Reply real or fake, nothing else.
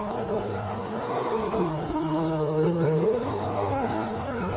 fake